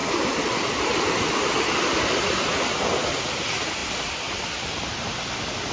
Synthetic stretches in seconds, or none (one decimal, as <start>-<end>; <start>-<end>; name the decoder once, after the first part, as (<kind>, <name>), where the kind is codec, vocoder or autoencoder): none